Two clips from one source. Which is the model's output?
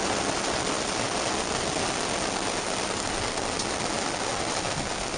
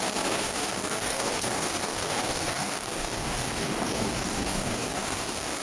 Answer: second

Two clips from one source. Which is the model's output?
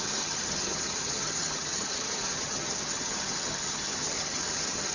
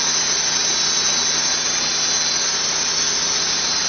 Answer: first